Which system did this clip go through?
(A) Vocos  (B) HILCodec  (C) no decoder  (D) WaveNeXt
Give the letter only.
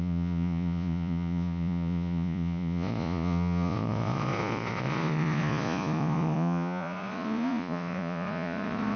A